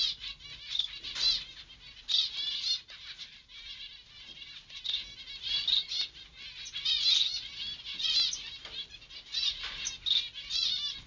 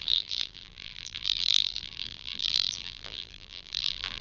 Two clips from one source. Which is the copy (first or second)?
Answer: second